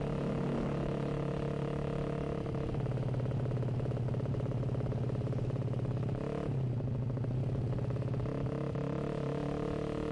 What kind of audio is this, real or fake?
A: real